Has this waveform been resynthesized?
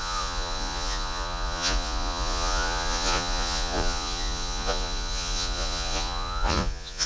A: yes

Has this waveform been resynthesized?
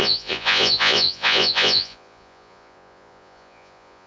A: yes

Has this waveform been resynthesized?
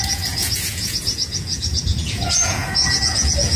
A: yes